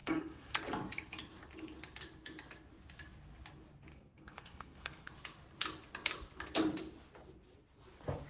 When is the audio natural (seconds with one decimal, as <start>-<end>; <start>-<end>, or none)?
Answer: 0.6-3.9; 5.1-8.3